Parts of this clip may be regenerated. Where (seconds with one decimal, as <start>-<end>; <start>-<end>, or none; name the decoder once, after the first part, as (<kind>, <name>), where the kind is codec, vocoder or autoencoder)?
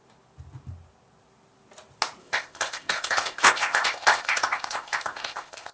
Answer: 2.2-5.7 (codec, ZipCodec)